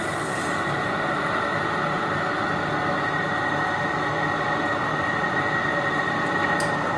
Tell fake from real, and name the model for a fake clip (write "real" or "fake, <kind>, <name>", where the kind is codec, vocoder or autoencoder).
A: real